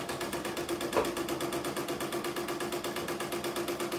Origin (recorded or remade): recorded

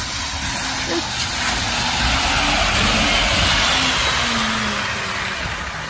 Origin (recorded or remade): recorded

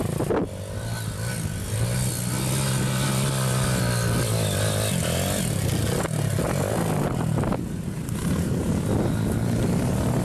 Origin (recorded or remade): recorded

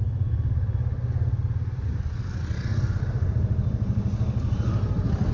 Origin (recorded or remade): recorded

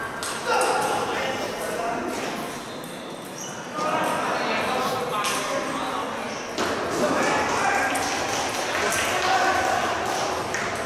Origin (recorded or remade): recorded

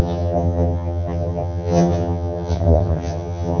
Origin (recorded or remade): remade